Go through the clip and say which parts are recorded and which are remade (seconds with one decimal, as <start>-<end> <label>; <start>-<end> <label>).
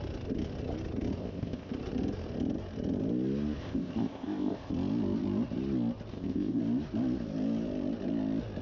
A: 0.0-1.2 recorded; 1.2-1.7 remade; 1.7-3.6 recorded; 3.6-4.7 remade; 4.7-6.1 recorded; 6.1-6.6 remade; 6.6-8.6 recorded